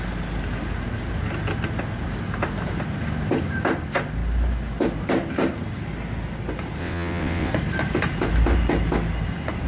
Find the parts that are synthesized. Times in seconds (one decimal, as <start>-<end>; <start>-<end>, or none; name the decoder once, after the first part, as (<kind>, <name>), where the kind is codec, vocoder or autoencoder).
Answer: 6.8-7.5 (vocoder, WaveNeXt)